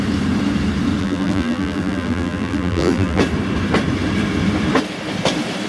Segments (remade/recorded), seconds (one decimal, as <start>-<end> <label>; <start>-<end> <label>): 0.0-1.0 recorded; 1.0-3.2 remade; 3.2-5.7 recorded